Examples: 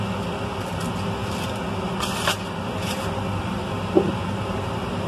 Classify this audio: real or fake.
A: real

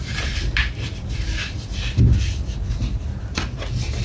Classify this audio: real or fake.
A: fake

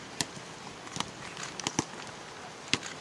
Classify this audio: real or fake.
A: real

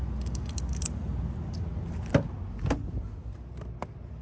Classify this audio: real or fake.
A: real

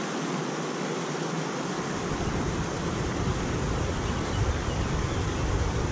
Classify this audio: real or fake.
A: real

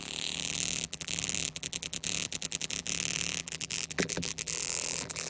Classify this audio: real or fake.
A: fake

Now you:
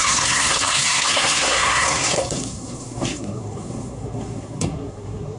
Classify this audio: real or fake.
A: fake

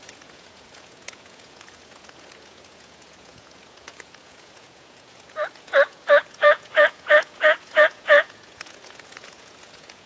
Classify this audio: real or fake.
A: fake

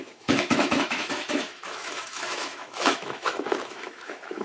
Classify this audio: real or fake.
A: fake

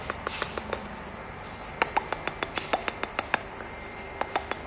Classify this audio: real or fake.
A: real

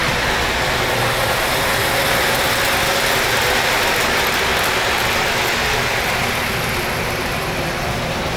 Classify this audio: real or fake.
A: real